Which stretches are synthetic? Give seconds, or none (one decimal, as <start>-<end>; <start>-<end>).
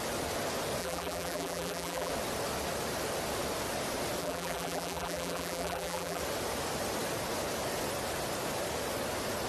0.8-2.1; 4.2-6.2